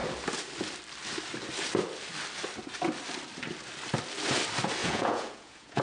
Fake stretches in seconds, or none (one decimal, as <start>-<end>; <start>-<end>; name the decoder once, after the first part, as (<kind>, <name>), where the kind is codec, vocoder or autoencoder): 4.8-5.8 (vocoder, Vocos)